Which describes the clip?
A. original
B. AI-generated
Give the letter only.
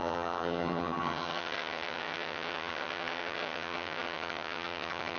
B